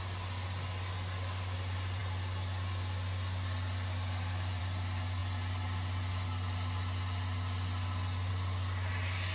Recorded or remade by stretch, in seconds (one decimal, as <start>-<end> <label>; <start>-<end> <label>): 0.0-9.3 recorded